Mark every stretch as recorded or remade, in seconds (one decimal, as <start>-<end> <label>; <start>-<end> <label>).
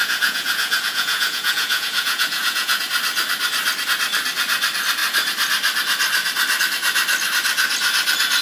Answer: 0.0-2.8 remade; 2.8-8.4 recorded